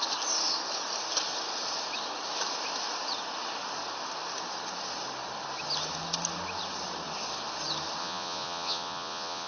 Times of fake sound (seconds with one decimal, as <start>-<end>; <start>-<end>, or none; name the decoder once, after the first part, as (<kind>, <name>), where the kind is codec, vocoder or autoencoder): 8.0-9.5 (vocoder, Vocos)